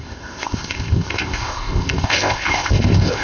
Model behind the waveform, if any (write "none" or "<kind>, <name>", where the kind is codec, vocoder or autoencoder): codec, ZipCodec